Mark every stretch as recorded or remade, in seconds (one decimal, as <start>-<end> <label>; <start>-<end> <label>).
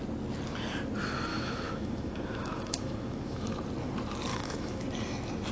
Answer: 0.0-1.3 recorded; 1.3-3.6 remade; 3.6-4.3 recorded; 4.3-4.8 remade; 4.8-5.5 recorded